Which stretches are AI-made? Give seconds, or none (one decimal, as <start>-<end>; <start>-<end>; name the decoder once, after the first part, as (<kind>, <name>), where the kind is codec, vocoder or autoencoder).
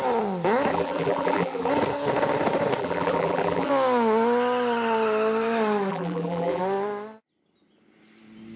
0.7-1.7 (vocoder, BigVGAN v2); 2.8-3.7; 5.9-6.6